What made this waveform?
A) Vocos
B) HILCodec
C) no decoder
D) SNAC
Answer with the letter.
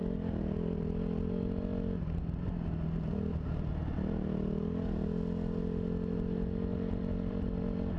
C